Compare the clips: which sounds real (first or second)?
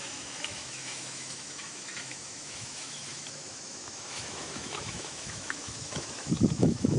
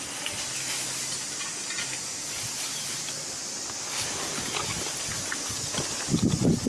second